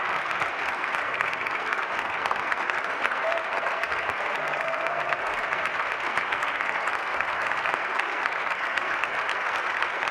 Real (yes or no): no